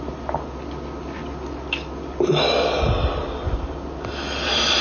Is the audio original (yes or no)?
yes